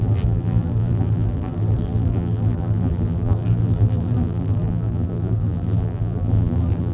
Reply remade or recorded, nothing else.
remade